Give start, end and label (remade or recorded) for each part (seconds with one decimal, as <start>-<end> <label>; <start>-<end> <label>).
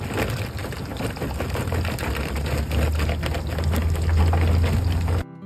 0.0-5.5 recorded